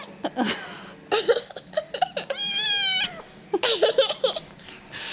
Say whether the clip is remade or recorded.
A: recorded